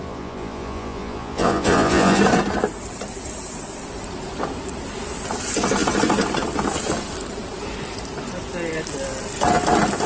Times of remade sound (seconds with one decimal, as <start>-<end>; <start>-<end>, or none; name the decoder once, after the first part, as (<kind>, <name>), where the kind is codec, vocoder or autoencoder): 0.0-2.2 (vocoder, Vocos)